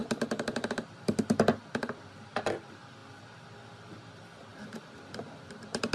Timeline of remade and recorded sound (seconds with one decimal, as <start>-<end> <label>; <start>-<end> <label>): 0.0-1.2 remade; 1.2-4.5 recorded; 4.5-5.9 remade